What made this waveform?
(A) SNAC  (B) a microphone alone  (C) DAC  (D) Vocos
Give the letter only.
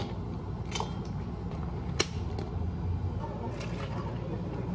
B